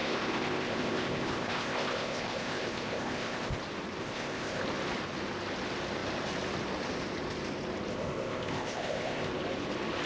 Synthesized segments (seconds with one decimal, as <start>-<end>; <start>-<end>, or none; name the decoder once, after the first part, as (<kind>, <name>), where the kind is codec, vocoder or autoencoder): 0.0-3.6 (codec, ZipCodec); 4.0-4.6; 7.9-9.3